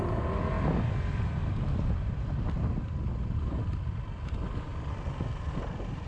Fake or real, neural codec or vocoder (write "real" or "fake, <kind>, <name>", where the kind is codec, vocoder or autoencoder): real